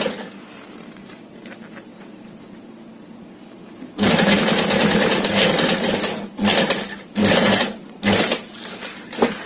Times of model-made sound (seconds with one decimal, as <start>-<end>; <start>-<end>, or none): none